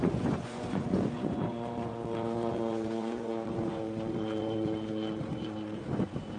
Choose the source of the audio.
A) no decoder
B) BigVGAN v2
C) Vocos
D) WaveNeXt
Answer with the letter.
C